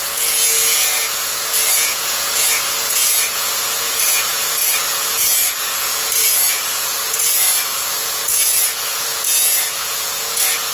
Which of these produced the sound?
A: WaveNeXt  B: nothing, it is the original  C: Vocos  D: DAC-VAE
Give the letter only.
C